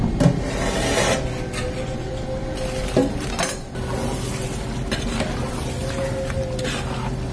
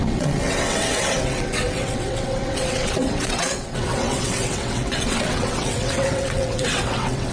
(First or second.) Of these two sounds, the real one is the first